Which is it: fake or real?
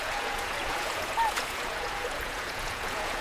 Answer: fake